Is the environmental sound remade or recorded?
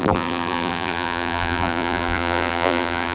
remade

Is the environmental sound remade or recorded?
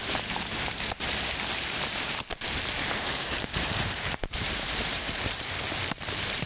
remade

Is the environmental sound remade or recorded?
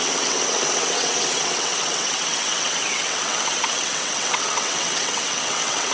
remade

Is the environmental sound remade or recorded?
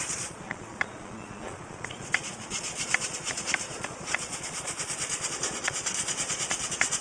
remade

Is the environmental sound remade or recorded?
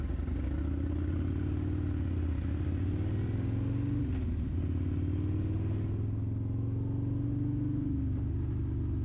recorded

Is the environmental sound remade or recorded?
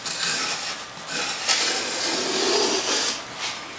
recorded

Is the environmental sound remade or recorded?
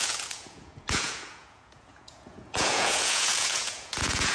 remade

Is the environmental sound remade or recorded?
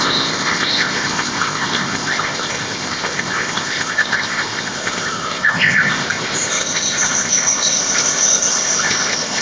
remade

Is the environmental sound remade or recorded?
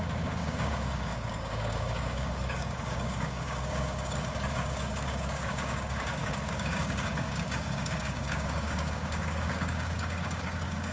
remade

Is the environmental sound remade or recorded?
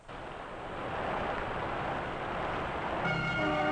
recorded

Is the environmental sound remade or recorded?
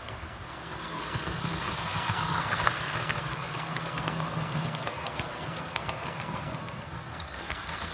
remade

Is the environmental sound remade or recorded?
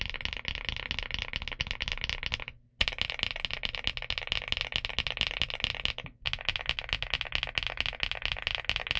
recorded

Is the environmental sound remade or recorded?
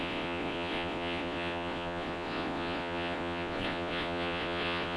remade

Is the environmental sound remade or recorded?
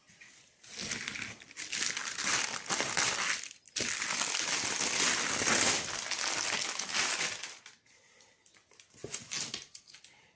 recorded